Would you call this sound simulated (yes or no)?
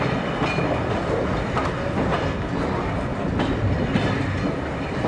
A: no